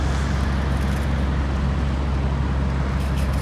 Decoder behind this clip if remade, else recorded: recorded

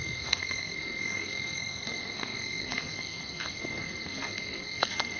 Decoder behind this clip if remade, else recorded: remade, codec, SNAC